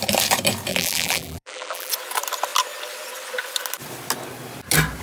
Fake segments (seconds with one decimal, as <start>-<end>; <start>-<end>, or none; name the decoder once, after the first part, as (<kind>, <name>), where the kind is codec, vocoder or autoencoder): 0.7-1.9 (vocoder, BigVGAN v2)